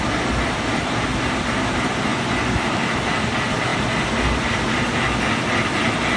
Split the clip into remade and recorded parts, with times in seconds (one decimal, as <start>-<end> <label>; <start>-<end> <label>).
0.0-2.1 recorded; 2.1-2.6 remade; 2.6-6.2 recorded